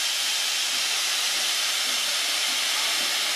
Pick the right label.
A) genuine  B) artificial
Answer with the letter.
B